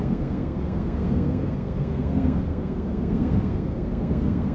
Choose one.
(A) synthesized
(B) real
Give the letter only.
A